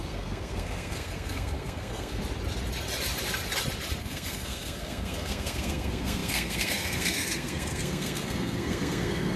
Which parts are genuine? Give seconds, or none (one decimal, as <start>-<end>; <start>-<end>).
2.2-4.0